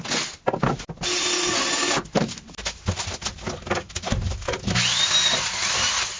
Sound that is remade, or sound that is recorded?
recorded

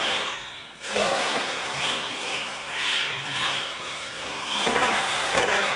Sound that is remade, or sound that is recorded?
remade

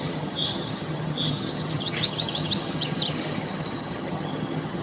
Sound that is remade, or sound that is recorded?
remade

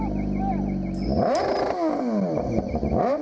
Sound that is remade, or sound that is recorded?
recorded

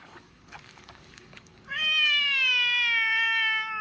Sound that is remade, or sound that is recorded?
remade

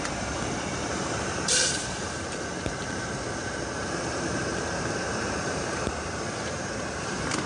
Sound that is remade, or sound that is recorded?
remade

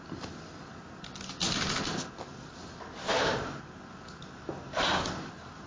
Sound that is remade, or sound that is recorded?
recorded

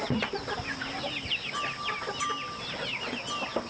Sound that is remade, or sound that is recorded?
recorded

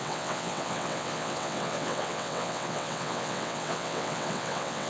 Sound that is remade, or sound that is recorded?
remade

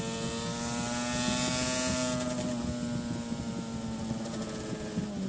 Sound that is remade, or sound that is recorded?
recorded